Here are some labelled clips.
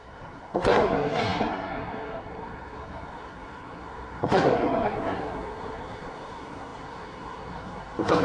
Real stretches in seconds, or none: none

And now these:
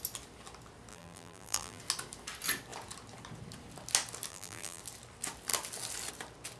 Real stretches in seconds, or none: 0.0-0.9; 1.8-4.3; 4.8-6.6